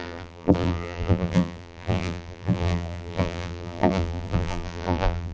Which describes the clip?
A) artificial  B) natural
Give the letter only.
A